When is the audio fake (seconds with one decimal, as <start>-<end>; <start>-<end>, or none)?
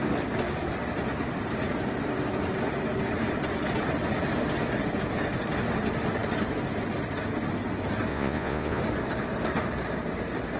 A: 8.1-8.8